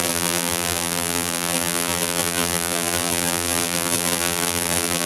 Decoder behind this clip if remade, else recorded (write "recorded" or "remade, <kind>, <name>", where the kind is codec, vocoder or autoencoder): remade, vocoder, BigVGAN v2